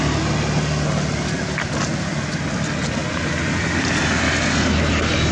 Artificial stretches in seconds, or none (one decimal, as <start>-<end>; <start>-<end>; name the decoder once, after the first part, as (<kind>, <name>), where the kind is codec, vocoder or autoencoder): none